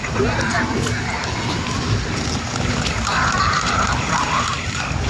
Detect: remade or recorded recorded